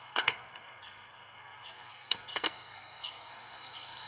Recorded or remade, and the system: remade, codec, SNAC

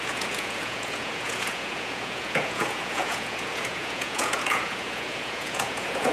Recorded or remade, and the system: remade, vocoder, Vocos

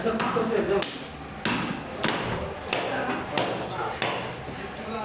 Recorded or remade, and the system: recorded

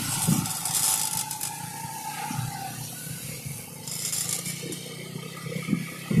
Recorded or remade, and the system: recorded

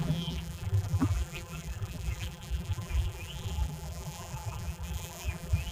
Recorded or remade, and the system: remade, vocoder, BigVGAN v2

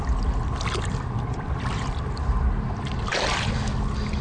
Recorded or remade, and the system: recorded